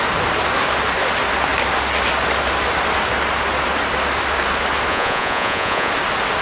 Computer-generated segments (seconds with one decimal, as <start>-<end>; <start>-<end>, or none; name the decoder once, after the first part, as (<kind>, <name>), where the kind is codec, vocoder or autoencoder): 4.9-5.9 (vocoder, Vocos)